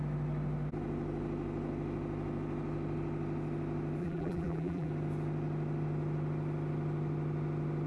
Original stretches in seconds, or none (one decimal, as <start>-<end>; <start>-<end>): 0.0-4.0; 4.9-7.9